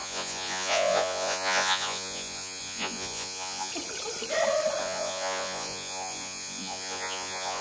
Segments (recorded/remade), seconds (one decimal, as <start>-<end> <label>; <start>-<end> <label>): 0.0-3.7 remade; 3.7-4.8 recorded; 4.8-7.6 remade